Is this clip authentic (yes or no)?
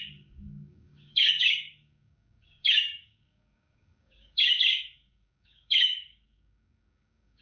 no